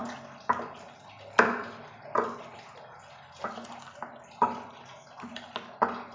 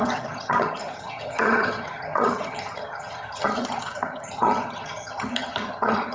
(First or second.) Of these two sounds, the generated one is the second